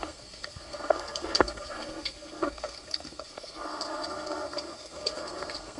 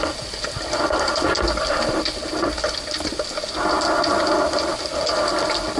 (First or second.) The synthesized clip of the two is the first